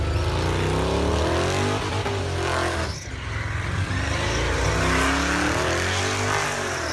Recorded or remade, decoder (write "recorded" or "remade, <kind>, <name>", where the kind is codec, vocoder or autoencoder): recorded